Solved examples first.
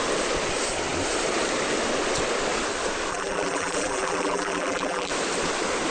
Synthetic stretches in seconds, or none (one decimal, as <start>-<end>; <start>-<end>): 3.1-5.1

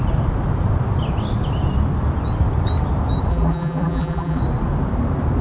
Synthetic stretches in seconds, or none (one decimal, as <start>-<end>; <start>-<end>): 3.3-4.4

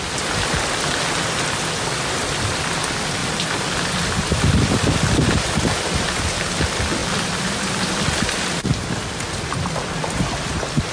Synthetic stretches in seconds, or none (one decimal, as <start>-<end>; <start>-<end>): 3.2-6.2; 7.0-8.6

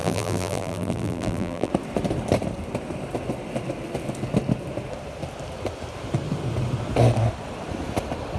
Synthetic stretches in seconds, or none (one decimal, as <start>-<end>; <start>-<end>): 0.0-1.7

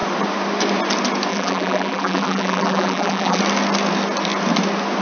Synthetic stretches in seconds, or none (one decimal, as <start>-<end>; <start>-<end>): 1.3-3.4

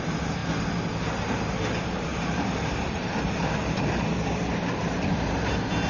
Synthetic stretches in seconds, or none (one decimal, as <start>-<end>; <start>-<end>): 0.0-0.4; 1.0-5.9

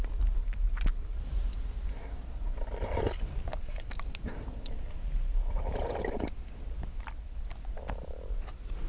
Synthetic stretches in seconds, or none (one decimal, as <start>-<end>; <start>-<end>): 0.4-1.3; 3.5-6.3

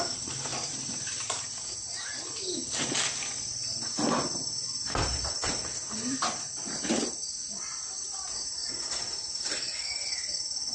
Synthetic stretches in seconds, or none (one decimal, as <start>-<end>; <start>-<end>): 0.5-2.0; 5.4-7.2